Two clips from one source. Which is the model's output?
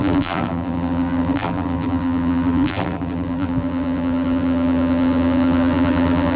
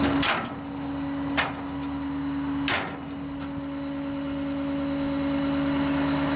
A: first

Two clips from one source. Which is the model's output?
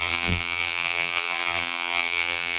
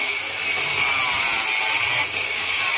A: first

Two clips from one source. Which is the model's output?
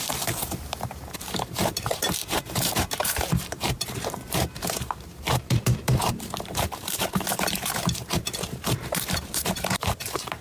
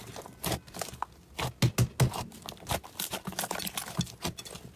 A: first